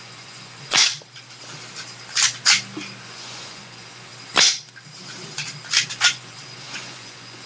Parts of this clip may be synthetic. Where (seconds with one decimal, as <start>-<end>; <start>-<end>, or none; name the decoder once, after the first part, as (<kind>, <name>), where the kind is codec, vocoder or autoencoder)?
0.0-0.9 (vocoder, Vocos); 3.0-4.1; 5.9-7.5